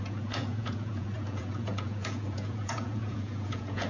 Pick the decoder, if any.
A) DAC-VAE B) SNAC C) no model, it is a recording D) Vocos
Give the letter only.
D